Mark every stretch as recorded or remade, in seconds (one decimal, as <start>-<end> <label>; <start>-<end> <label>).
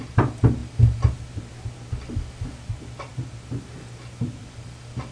0.0-5.1 recorded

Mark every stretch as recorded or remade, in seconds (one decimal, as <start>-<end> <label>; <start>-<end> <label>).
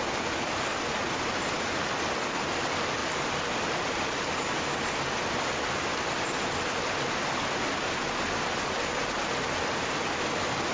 0.0-10.7 recorded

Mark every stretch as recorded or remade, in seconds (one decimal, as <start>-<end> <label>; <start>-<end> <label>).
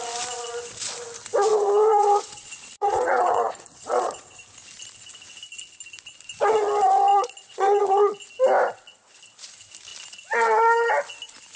0.0-1.5 recorded; 1.5-4.4 remade; 4.4-7.1 recorded; 7.1-7.8 remade; 7.8-11.6 recorded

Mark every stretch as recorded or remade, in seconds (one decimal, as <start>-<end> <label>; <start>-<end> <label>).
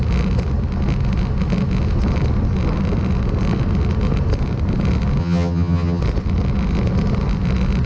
0.0-5.2 recorded; 5.2-6.0 remade; 6.0-7.9 recorded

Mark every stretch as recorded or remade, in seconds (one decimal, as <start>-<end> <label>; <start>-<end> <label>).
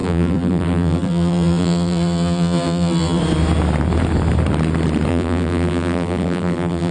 0.0-3.2 remade; 3.2-5.1 recorded; 5.1-6.9 remade